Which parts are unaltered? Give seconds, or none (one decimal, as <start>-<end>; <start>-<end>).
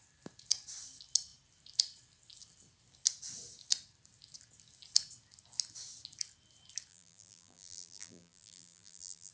0.0-6.9